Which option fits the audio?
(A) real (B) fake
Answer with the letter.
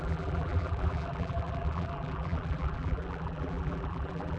B